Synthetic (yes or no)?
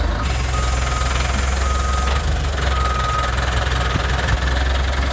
no